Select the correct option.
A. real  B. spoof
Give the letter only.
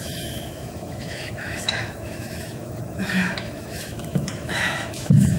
B